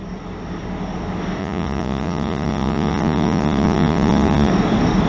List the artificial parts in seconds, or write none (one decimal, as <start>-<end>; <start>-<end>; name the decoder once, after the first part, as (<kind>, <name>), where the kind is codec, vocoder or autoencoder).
1.4-4.5 (vocoder, Vocos)